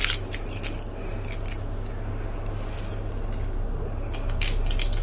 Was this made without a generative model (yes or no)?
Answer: yes